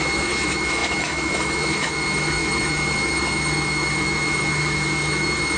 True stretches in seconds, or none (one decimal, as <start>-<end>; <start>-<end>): none